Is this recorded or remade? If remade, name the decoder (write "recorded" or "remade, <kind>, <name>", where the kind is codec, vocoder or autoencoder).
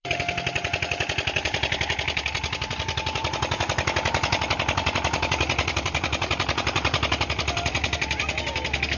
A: remade, vocoder, BigVGAN v2